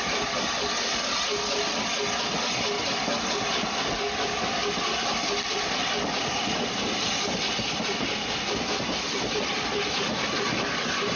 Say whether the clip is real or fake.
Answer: real